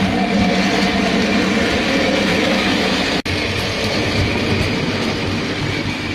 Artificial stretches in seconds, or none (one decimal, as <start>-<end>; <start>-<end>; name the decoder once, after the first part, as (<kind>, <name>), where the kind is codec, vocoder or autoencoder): 2.3-2.9 (autoencoder, DAC-VAE)